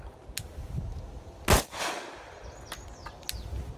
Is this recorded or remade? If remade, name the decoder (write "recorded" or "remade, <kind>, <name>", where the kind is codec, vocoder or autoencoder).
recorded